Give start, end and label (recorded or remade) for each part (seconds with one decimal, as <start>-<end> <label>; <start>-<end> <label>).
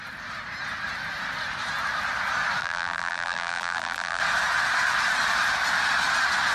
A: 0.0-2.6 recorded; 2.6-4.2 remade; 4.2-6.5 recorded